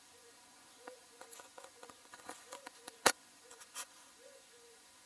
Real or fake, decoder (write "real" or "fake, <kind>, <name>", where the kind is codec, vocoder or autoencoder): fake, vocoder, Vocos